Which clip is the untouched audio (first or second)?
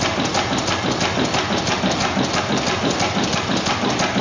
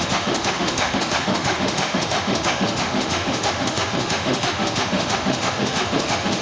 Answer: first